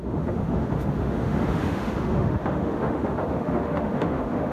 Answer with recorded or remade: remade